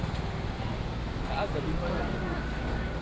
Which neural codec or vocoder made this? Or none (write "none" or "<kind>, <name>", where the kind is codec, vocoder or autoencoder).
none